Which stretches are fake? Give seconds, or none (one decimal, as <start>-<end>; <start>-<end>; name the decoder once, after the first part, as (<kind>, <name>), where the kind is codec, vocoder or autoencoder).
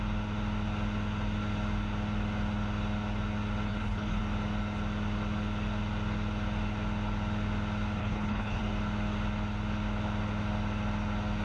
3.7-4.2 (codec, HILCodec); 8.0-8.6